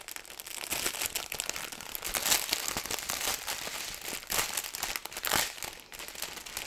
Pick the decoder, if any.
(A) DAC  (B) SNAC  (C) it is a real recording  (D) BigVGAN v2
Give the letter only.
C